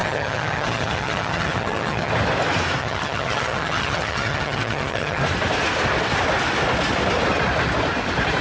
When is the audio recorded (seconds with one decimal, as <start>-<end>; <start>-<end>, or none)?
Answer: 2.1-2.8; 5.2-8.4